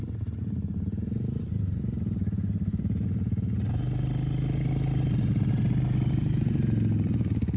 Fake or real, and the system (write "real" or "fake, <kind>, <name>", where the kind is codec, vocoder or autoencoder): real